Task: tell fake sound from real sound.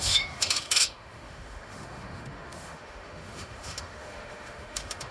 fake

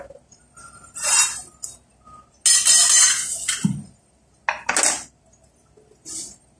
real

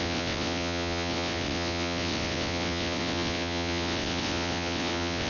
fake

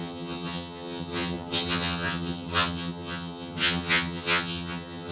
fake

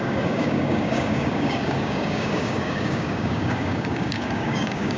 fake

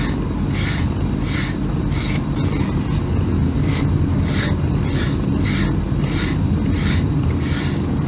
real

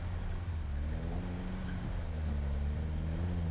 real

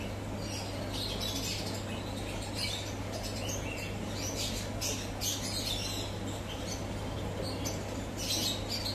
real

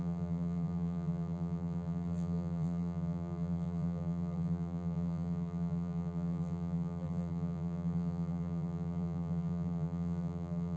fake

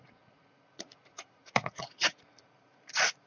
fake